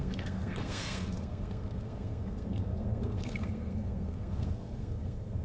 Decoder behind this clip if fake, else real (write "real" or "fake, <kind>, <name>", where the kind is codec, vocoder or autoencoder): fake, codec, SNAC